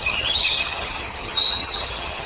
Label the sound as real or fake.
fake